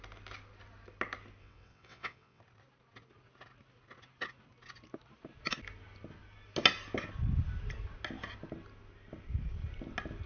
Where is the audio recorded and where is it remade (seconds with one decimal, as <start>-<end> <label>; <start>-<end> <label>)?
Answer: 0.0-1.4 recorded; 1.4-2.4 remade; 2.4-10.3 recorded